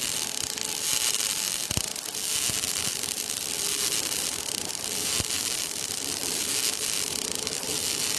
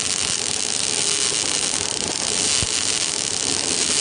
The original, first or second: second